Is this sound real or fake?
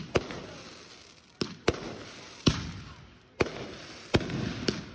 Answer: real